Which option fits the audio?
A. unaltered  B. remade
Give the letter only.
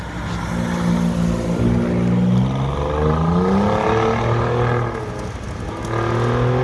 A